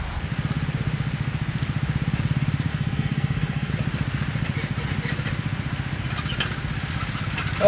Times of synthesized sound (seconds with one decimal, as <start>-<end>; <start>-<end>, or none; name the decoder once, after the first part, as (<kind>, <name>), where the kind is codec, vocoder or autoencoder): 2.7-3.7 (codec, SNAC)